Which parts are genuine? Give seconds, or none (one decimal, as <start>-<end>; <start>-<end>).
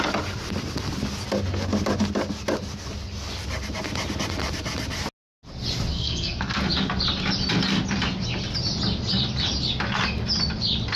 0.0-5.9; 6.6-11.0